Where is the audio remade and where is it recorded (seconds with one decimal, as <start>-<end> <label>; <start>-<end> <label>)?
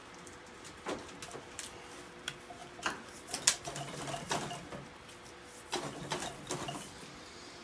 0.0-1.1 remade; 1.1-7.6 recorded